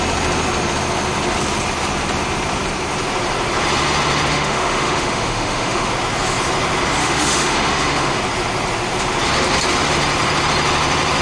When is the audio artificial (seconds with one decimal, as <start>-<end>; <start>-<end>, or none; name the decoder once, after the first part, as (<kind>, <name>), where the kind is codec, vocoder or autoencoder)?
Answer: 4.3-5.9 (autoencoder, DAC-VAE); 7.0-8.2